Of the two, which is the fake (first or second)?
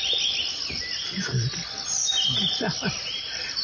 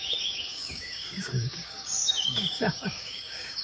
second